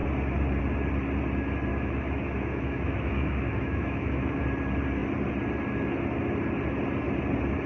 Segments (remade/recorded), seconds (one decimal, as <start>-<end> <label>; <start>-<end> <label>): 0.0-1.7 recorded; 1.7-4.4 remade; 4.4-7.7 recorded